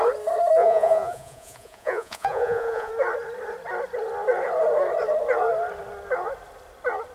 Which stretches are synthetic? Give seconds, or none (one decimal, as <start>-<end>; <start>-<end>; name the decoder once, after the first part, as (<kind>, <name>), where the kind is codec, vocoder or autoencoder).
0.6-2.9 (vocoder, Vocos)